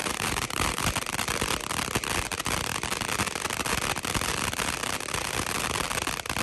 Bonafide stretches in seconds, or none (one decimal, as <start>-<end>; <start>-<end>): 0.8-6.4